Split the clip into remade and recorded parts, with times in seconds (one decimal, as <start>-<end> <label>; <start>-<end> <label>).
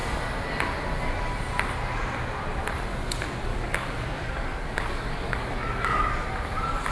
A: 0.0-3.5 recorded; 3.5-6.1 remade; 6.1-6.9 recorded